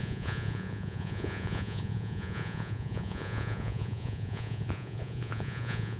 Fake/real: fake